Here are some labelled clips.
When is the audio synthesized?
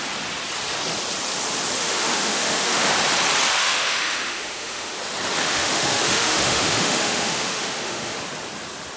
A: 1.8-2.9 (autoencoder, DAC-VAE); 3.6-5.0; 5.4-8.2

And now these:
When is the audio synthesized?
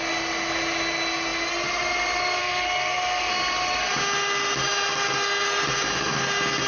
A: 2.4-3.3 (codec, SNAC)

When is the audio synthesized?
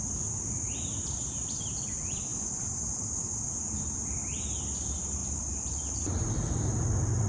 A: 0.0-0.9 (vocoder, BigVGAN v2); 5.2-7.3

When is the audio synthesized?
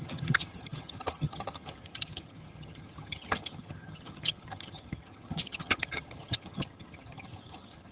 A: 0.0-7.9 (vocoder, HiFi-GAN)